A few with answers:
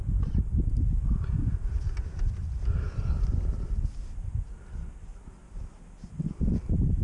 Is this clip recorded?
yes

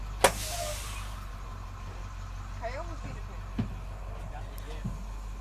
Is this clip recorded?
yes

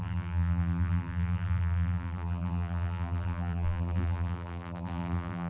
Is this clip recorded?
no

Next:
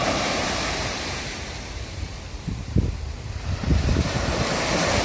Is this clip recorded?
no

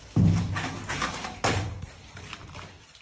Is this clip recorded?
no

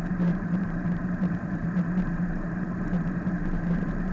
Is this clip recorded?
no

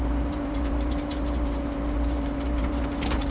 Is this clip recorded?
no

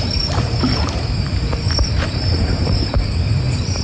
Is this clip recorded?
no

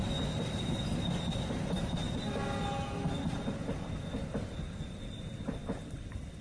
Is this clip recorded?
yes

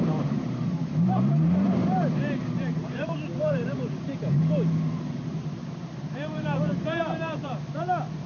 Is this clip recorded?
no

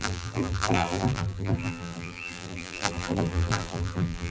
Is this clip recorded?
no